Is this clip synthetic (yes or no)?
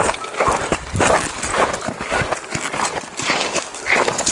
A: no